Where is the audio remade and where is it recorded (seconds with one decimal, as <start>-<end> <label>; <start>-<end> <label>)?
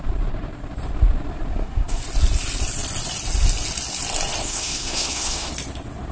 0.0-1.5 recorded; 1.5-2.0 remade; 2.0-4.4 recorded; 4.4-5.5 remade; 5.5-6.1 recorded